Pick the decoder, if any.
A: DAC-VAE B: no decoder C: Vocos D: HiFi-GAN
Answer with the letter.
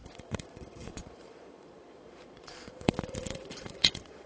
C